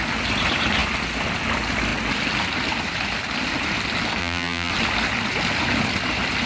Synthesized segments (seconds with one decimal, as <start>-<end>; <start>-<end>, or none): 4.2-4.7